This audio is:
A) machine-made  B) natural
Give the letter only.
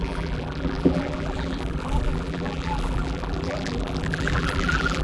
A